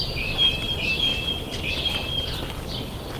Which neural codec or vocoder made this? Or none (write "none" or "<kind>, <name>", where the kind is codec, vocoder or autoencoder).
none